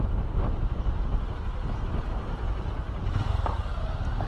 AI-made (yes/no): no